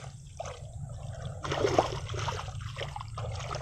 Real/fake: real